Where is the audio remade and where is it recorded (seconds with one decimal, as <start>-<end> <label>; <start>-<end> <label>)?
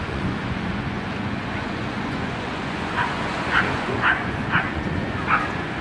0.0-5.8 remade